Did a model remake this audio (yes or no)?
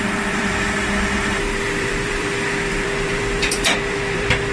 yes